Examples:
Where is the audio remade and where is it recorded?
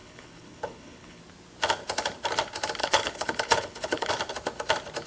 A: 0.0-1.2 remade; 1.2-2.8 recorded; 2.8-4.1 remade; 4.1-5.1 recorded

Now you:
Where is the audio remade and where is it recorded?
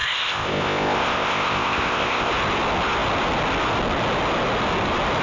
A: 0.0-2.3 remade; 2.3-5.2 recorded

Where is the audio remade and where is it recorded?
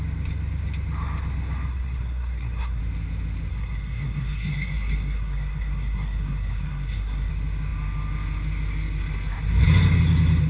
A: 0.0-1.7 recorded; 1.7-2.8 remade; 2.8-3.5 recorded; 3.5-7.3 remade; 7.3-10.5 recorded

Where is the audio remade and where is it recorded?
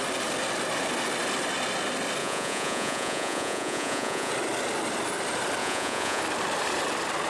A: 0.0-2.2 recorded; 2.2-4.3 remade; 4.3-5.6 recorded; 5.6-6.2 remade; 6.2-7.3 recorded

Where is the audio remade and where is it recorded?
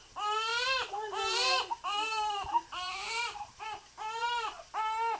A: 0.0-0.5 recorded; 0.5-3.6 remade; 3.6-4.2 recorded; 4.2-4.8 remade; 4.8-5.2 recorded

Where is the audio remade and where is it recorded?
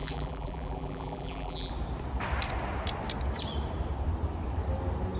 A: 0.0-1.7 remade; 1.7-5.2 recorded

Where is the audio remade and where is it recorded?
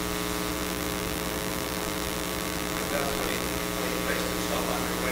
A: 0.0-0.5 recorded; 0.5-3.6 remade; 3.6-5.1 recorded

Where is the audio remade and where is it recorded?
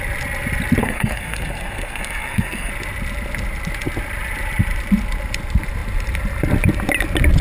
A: 0.0-0.8 recorded; 0.8-2.7 remade; 2.7-7.4 recorded